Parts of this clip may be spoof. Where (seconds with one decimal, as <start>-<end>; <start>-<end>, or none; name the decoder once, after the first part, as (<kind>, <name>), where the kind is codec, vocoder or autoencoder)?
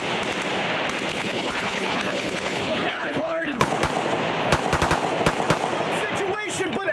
1.1-3.7 (codec, HILCodec)